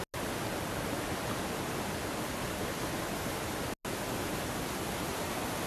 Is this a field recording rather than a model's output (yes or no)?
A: yes